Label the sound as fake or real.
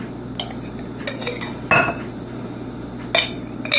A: real